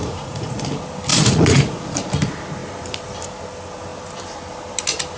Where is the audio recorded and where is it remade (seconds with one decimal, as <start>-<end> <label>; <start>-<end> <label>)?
0.0-0.6 remade; 0.6-1.1 recorded; 1.1-1.8 remade; 1.8-5.2 recorded